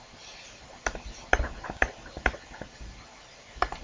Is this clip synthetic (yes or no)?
no